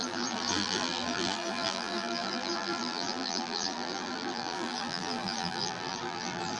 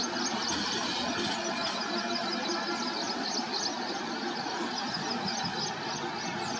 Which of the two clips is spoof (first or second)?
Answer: first